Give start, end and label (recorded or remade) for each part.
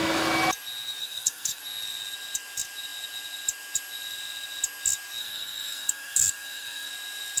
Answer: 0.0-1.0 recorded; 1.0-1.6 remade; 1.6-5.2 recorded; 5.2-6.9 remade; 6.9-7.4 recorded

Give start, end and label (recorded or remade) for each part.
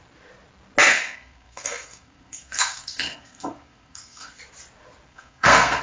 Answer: 0.0-0.9 recorded; 0.9-4.4 remade; 4.4-5.1 recorded; 5.1-5.8 remade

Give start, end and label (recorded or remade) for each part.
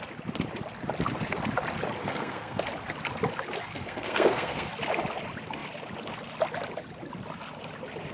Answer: 0.0-2.0 recorded; 2.0-2.6 remade; 2.6-3.6 recorded; 3.6-4.7 remade; 4.7-8.1 recorded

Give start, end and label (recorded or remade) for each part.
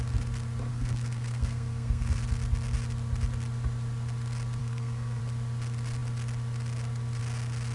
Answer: 0.0-0.7 recorded; 0.7-2.2 remade; 2.2-4.6 recorded; 4.6-5.2 remade; 5.2-7.7 recorded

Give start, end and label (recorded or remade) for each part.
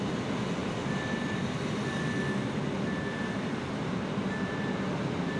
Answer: 0.0-5.4 recorded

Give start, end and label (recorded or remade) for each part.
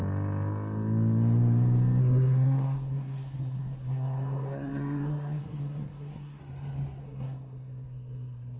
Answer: 0.0-2.0 recorded; 2.0-6.4 remade; 6.4-7.0 recorded; 7.0-8.6 remade